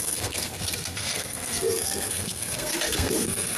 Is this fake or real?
fake